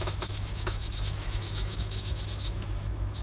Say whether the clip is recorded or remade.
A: remade